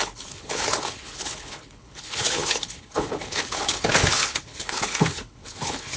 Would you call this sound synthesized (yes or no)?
yes